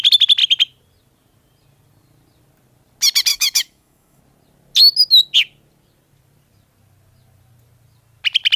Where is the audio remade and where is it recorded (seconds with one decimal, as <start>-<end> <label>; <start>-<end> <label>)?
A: 0.0-3.3 recorded; 3.3-4.2 remade; 4.2-8.6 recorded